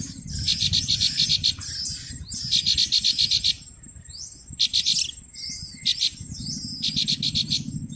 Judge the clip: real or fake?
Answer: real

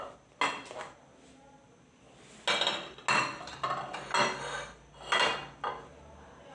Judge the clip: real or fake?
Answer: real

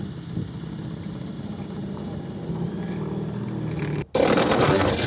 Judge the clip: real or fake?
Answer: real